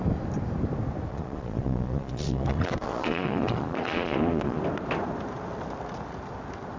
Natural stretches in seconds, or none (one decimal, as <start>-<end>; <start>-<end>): 0.0-1.1; 4.6-6.8